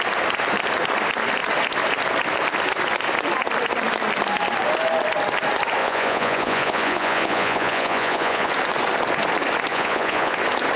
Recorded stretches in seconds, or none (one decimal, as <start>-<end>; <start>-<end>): 0.0-5.8; 8.5-9.7; 10.4-10.8